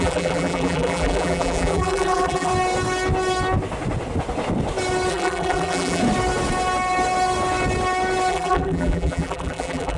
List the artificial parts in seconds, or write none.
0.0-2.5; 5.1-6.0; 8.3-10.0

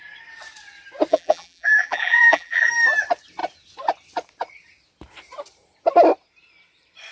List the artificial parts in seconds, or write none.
1.1-2.7

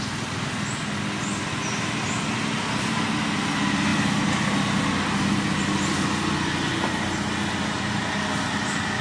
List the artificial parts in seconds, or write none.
1.6-2.9

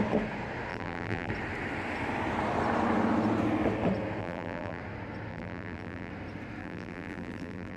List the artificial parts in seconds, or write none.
0.7-1.3; 4.2-4.8; 5.3-6.1; 6.6-7.8

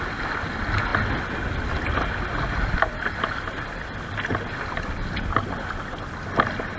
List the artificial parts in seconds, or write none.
none

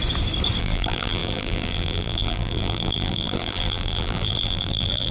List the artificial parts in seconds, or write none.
0.6-5.1

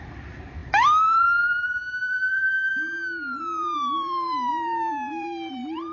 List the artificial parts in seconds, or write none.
0.0-2.7; 3.4-5.9